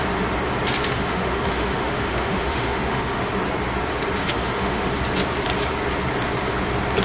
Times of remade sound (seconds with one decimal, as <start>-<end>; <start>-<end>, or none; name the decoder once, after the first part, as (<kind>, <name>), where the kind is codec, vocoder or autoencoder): 0.9-3.3 (autoencoder, DAC-VAE); 4.2-4.9